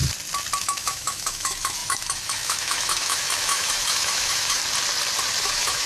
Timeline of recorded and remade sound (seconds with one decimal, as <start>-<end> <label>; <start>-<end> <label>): 0.0-0.6 recorded; 0.6-4.6 remade; 4.6-5.4 recorded; 5.4-5.9 remade